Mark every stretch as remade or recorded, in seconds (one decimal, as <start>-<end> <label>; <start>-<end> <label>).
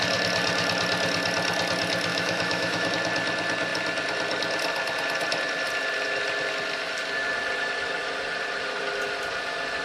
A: 0.0-2.1 recorded; 2.1-2.9 remade; 2.9-9.8 recorded